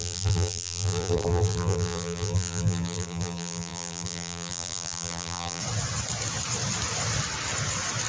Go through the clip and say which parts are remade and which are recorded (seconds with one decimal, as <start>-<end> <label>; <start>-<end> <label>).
0.0-5.6 remade; 5.6-8.1 recorded